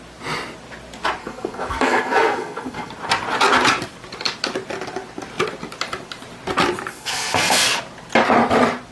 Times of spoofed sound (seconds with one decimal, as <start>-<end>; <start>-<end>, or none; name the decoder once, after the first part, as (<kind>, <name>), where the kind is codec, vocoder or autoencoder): 1.2-2.9 (codec, SNAC); 6.9-7.8